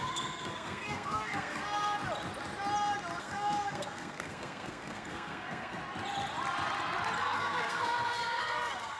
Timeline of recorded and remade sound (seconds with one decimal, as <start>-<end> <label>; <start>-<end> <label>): 0.0-2.0 remade; 2.0-3.2 recorded; 3.2-5.8 remade; 5.8-7.2 recorded; 7.2-9.0 remade